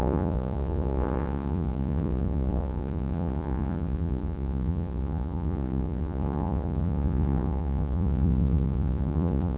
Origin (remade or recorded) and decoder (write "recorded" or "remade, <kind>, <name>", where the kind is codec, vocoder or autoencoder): remade, vocoder, Vocos